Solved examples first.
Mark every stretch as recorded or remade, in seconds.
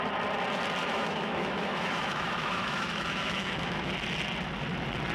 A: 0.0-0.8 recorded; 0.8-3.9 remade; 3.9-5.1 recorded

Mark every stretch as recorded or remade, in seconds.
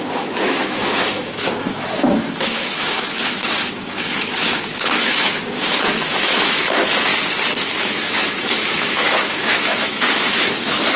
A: 0.0-7.1 remade; 7.1-7.6 recorded; 7.6-11.0 remade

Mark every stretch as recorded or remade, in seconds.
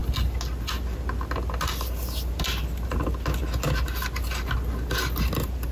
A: 0.0-5.7 recorded